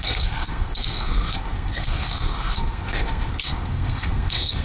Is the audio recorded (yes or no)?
no